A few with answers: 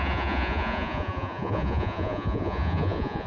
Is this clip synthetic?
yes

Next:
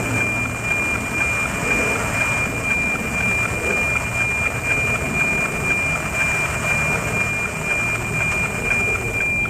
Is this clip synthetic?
no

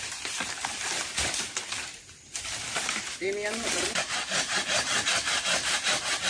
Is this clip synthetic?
yes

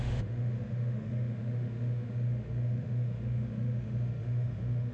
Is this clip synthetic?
yes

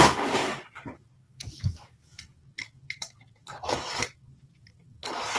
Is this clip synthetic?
yes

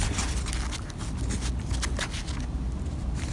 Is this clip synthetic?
no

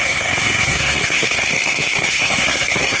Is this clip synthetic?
yes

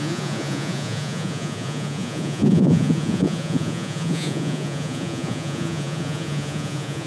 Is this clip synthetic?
yes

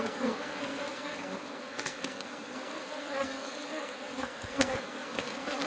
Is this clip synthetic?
yes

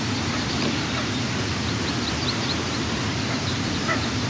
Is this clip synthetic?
yes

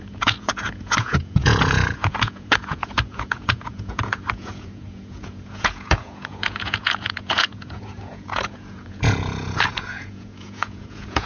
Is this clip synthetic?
yes